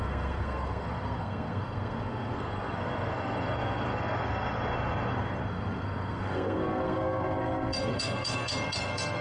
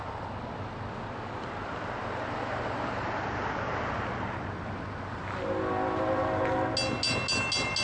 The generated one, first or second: first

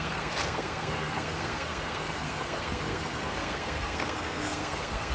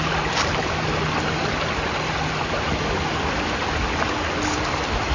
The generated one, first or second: first